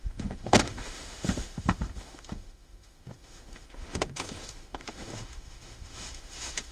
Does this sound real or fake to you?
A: fake